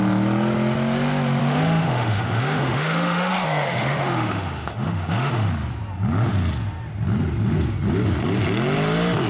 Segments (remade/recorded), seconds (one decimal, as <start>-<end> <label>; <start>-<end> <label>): 0.0-1.4 recorded; 1.4-5.5 remade; 5.5-9.3 recorded

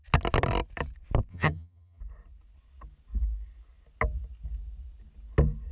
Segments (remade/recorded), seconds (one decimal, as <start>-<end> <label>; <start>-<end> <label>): 0.0-1.3 recorded; 1.3-2.0 remade; 2.0-5.7 recorded

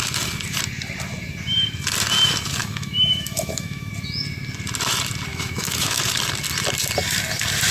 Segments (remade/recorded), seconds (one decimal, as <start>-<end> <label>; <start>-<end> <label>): 0.0-2.6 recorded; 2.6-3.9 remade; 3.9-5.3 recorded; 5.3-6.0 remade; 6.0-7.7 recorded

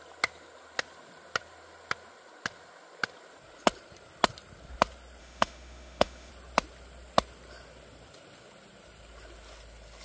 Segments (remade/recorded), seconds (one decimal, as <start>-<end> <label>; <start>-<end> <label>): 0.0-5.2 recorded; 5.2-6.3 remade; 6.3-10.0 recorded

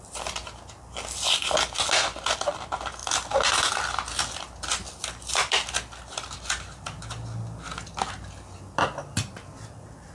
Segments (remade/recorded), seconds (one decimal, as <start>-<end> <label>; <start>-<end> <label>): 0.0-10.1 recorded